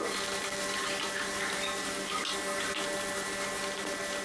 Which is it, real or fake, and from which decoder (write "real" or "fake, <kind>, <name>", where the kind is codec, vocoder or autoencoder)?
real